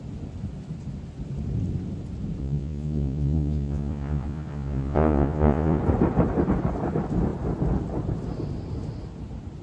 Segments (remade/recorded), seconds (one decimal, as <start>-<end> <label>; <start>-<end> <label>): 0.0-2.4 recorded; 2.4-5.8 remade; 5.8-9.6 recorded